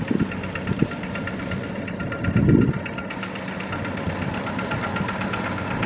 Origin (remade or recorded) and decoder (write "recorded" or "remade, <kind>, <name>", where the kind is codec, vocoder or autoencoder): recorded